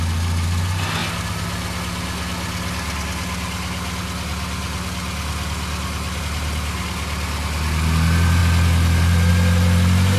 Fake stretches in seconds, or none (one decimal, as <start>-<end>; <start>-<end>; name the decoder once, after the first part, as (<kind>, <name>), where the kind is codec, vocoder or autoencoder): none